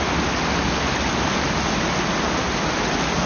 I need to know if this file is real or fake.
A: real